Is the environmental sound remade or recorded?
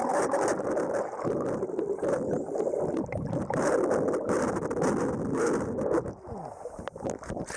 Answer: recorded